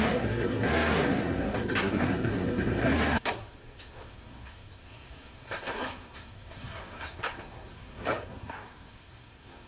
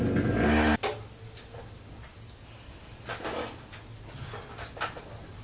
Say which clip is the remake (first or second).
first